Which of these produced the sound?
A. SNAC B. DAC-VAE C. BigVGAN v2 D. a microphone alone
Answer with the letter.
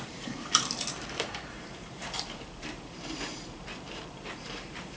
C